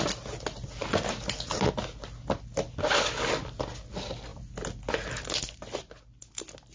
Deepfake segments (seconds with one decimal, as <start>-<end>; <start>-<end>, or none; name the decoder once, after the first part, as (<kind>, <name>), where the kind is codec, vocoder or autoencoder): none